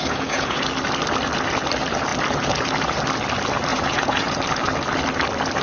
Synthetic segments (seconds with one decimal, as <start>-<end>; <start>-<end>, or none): 0.0-0.6; 3.7-4.3